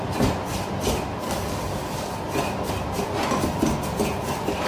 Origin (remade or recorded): recorded